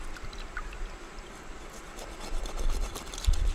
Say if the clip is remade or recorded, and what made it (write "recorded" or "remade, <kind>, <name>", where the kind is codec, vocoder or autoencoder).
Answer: remade, vocoder, BigVGAN v2